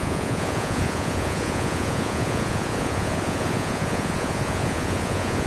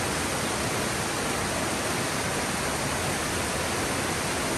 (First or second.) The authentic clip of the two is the second